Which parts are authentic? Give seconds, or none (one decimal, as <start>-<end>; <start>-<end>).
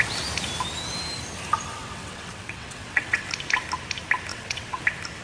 0.0-1.8; 3.3-4.3; 4.8-5.2